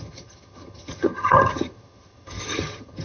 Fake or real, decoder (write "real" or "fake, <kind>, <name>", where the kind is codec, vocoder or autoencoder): fake, vocoder, HiFi-GAN